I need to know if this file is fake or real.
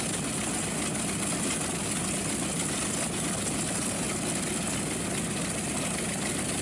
real